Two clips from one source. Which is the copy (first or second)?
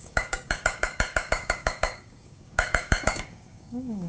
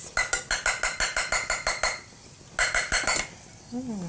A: first